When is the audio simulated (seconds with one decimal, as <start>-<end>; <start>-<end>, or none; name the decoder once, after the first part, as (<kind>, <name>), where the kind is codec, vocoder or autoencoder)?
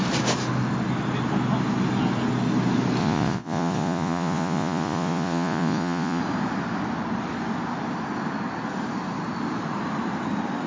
3.0-6.2 (vocoder, Vocos)